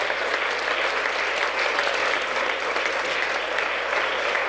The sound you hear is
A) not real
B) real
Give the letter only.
B